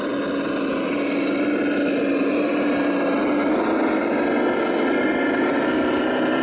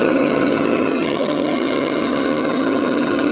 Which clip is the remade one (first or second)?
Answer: second